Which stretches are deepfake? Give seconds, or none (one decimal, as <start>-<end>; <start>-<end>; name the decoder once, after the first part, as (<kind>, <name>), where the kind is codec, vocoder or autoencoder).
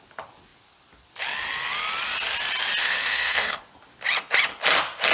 2.8-3.6 (codec, SNAC)